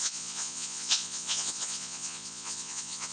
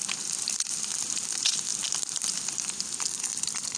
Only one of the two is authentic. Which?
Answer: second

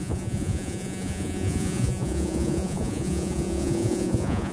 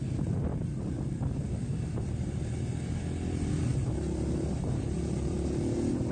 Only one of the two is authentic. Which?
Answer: second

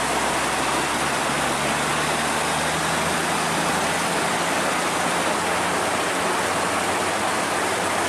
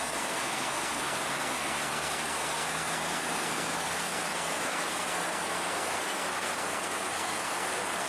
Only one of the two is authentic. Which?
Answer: first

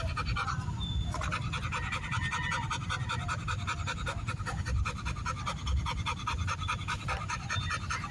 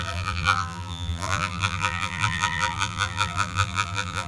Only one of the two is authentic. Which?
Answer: first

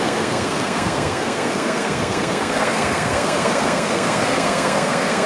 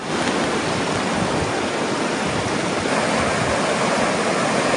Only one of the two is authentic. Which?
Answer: second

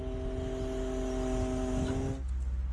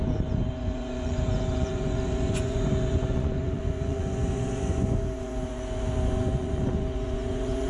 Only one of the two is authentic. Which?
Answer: first